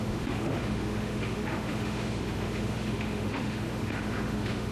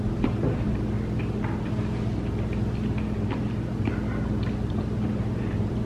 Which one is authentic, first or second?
second